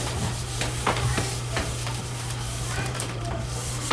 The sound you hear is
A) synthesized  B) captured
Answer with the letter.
A